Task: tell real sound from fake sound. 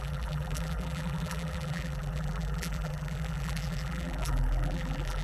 fake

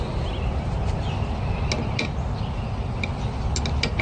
real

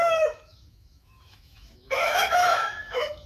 fake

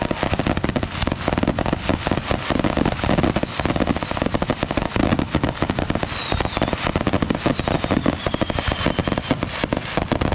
real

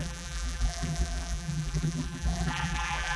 fake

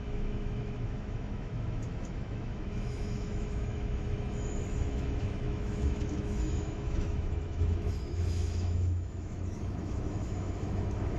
fake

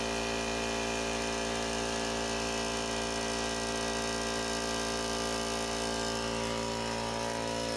real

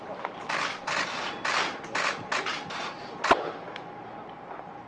real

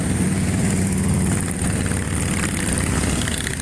fake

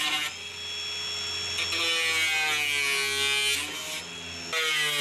real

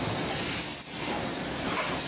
real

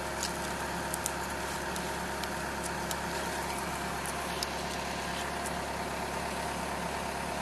real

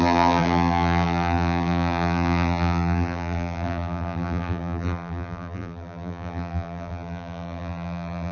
fake